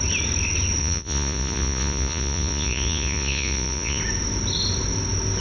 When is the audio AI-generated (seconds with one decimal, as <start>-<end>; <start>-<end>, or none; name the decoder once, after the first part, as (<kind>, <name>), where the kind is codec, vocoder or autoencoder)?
0.8-4.0 (vocoder, Vocos)